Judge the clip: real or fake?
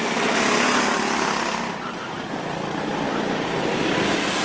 real